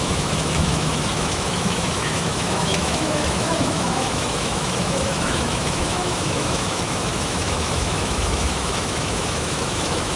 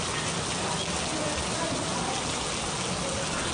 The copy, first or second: first